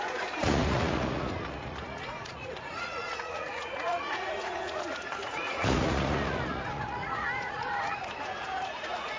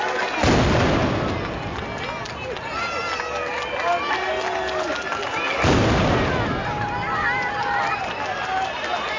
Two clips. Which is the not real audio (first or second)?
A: first